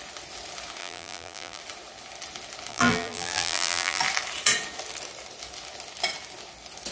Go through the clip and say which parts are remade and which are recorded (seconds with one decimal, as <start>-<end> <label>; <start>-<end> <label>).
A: 0.0-0.8 recorded; 0.8-1.6 remade; 1.6-2.7 recorded; 2.7-4.0 remade; 4.0-6.9 recorded